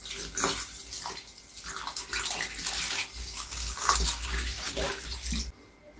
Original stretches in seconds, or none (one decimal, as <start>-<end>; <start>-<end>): 0.0-3.2; 4.9-6.0